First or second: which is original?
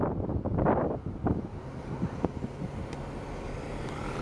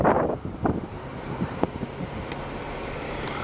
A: first